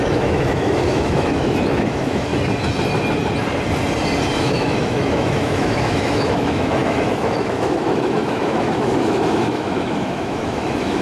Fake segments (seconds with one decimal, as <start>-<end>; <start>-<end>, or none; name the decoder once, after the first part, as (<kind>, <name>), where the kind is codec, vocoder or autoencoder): 0.0-2.3 (autoencoder, DAC-VAE); 4.4-11.0